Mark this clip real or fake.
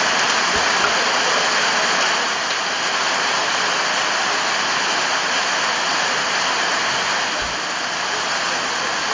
real